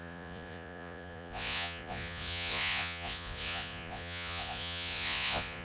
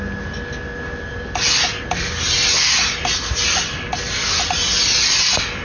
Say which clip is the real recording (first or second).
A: second